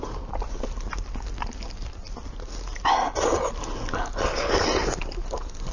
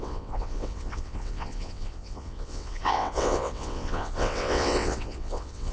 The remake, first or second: second